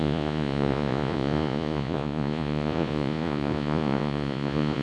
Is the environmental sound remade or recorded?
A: remade